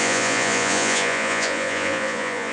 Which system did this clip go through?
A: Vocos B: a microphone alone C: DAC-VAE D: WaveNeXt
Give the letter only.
A